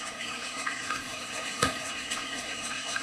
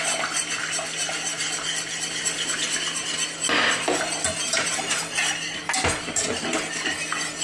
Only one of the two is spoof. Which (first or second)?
first